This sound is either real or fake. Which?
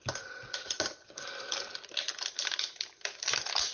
real